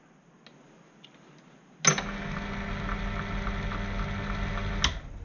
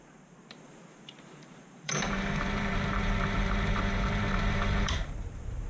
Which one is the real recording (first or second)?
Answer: first